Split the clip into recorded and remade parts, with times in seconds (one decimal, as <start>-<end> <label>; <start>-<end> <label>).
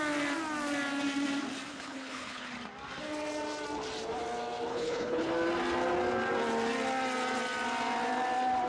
0.0-1.7 recorded; 1.7-2.5 remade; 2.5-4.7 recorded; 4.7-5.3 remade; 5.3-8.7 recorded